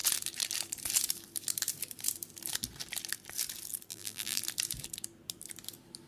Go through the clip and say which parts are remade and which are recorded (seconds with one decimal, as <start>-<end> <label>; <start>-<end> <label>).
0.0-3.9 recorded; 3.9-4.4 remade; 4.4-6.1 recorded